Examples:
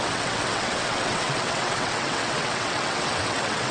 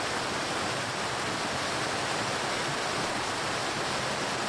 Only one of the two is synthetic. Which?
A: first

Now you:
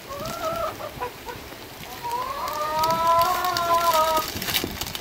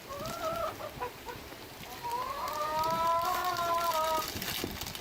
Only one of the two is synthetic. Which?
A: first